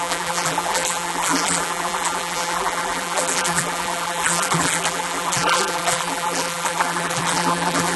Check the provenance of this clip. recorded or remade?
remade